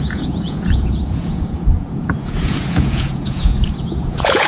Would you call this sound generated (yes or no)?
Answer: yes